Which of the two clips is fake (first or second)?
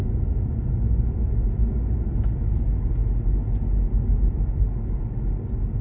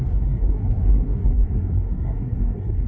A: second